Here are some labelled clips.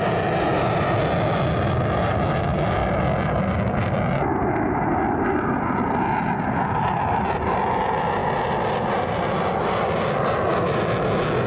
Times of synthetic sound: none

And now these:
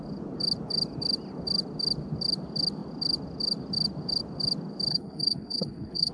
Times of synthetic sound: 4.9-6.1 (codec, HILCodec)

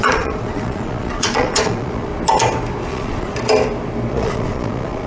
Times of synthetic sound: 0.0-2.1 (vocoder, Vocos); 2.9-3.3; 4.1-5.1

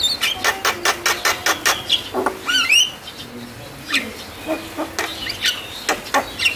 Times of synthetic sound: none

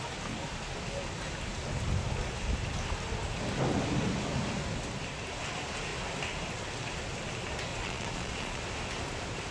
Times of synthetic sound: 7.7-8.6 (vocoder, Vocos)

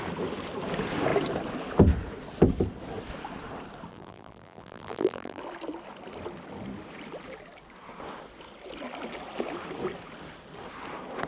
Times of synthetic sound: 3.9-5.4 (vocoder, BigVGAN v2)